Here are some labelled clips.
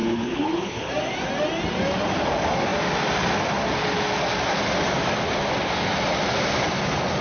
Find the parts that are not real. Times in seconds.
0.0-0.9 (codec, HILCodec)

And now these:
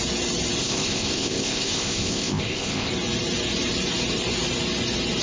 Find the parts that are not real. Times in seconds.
0.6-2.9 (codec, ZipCodec)